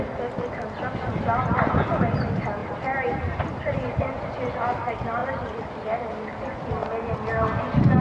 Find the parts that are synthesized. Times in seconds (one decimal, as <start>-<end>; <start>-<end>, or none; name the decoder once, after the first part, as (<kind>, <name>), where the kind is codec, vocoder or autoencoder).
2.6-4.0 (vocoder, BigVGAN v2); 5.2-6.1